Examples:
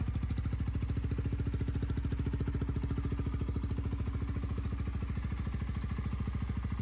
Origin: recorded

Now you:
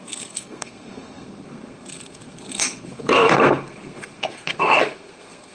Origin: remade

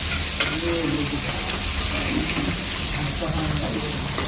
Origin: recorded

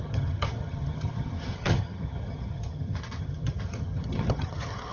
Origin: remade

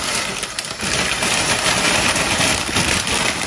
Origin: remade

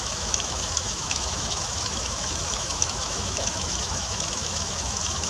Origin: remade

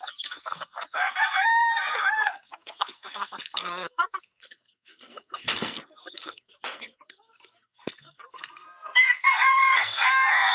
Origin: remade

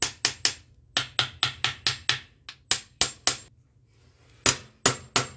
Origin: recorded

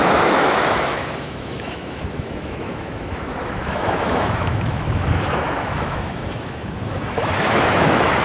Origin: remade